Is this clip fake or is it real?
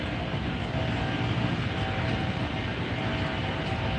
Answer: real